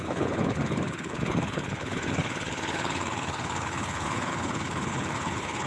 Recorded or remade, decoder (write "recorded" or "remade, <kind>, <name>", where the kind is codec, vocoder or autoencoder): remade, codec, HILCodec